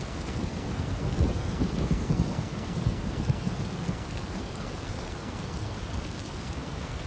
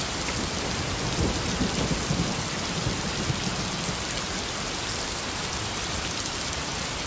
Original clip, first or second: second